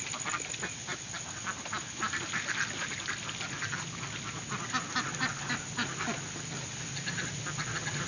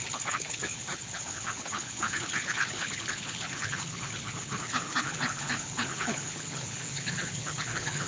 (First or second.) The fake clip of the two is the second